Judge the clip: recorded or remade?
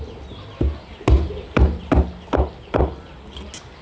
recorded